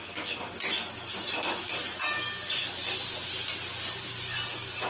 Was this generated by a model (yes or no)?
no